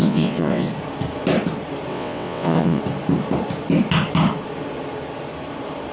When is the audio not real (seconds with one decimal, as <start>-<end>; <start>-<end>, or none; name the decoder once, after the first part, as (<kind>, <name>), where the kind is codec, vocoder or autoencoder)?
0.0-0.7 (vocoder, WaveNeXt); 1.9-2.8